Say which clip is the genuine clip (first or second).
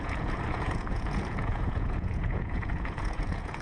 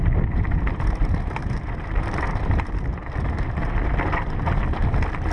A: second